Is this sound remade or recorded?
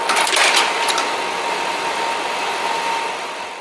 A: recorded